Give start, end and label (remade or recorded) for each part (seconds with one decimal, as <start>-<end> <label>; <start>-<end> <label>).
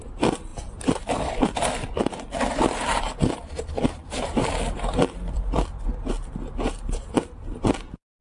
0.0-0.5 recorded; 0.5-2.0 remade; 2.0-4.0 recorded; 4.0-5.9 remade; 5.9-8.2 recorded